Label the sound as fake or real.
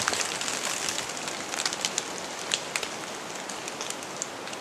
real